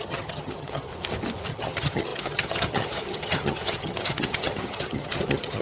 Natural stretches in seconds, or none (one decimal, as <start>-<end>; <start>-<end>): 0.9-1.5

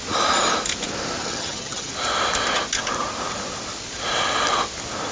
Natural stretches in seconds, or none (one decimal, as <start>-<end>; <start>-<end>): 0.0-1.2; 1.9-5.1

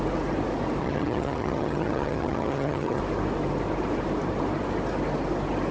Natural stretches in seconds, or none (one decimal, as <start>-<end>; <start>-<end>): 0.0-0.8; 3.0-5.7

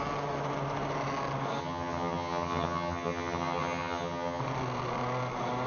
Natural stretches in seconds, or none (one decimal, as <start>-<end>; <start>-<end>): 0.0-1.6; 4.4-5.7

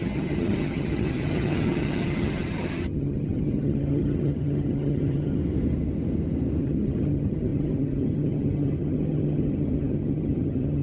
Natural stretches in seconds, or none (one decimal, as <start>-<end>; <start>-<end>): 5.4-6.6